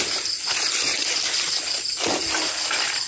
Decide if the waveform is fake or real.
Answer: real